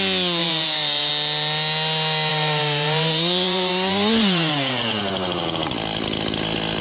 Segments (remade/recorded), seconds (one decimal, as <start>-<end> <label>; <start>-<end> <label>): 0.0-0.4 recorded; 0.4-1.1 remade; 1.1-2.3 recorded; 2.3-5.0 remade; 5.0-6.8 recorded